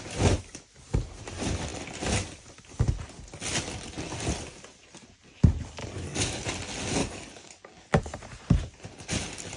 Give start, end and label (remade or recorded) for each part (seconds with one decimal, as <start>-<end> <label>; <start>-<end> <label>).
0.0-5.8 recorded; 5.8-6.5 remade; 6.5-7.0 recorded; 7.0-8.0 remade; 8.0-9.6 recorded